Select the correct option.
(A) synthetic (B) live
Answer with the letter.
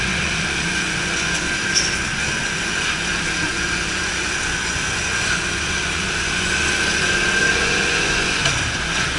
A